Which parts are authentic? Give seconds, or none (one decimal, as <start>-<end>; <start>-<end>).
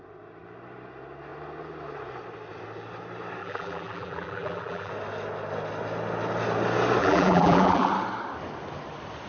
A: 0.0-3.4; 4.9-7.0; 7.9-9.3